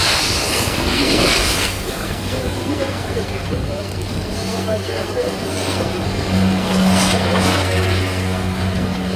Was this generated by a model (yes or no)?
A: yes